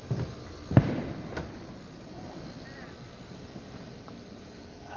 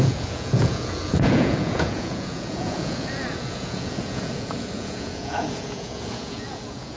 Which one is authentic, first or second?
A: first